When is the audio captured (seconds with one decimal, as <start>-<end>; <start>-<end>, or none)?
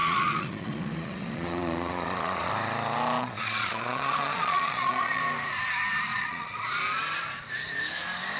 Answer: 2.5-3.2; 5.2-6.1; 6.7-8.4